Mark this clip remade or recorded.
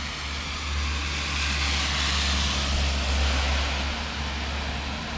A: recorded